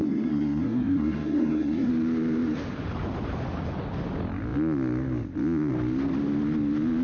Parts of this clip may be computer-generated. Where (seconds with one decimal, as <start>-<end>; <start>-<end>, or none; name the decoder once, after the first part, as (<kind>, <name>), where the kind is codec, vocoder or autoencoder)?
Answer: 0.0-1.9 (codec, SNAC)